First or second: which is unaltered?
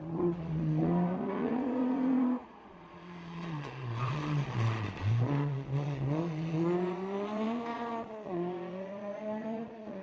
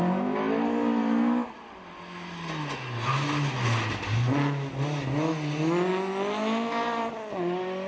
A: second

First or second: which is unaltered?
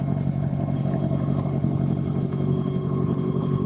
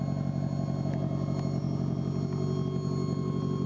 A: second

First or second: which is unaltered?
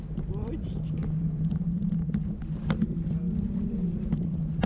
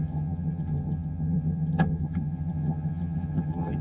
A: first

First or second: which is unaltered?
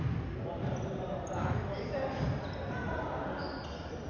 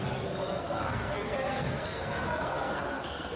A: first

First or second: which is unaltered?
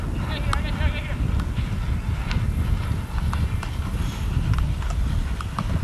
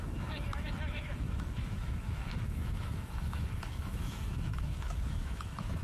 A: first